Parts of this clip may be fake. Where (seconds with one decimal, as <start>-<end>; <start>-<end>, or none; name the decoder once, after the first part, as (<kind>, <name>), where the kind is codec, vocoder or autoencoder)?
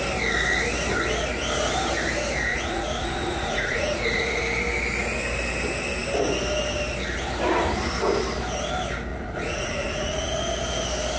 2.5-4.4 (vocoder, Vocos); 9.1-10.4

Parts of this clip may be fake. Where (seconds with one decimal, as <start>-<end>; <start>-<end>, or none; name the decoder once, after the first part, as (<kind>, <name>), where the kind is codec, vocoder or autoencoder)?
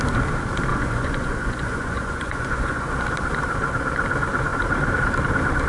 0.7-2.9 (vocoder, Vocos)